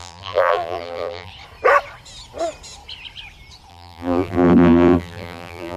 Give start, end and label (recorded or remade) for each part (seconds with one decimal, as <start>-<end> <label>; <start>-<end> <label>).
0.0-1.3 remade; 1.3-3.7 recorded; 3.7-5.8 remade